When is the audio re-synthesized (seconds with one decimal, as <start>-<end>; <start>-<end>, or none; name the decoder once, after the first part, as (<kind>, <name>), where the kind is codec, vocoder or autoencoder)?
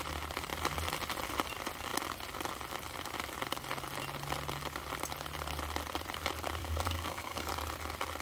6.6-7.5 (codec, SNAC)